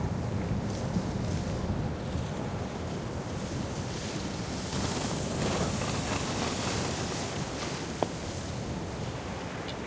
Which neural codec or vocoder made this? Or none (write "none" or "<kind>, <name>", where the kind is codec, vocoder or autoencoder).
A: none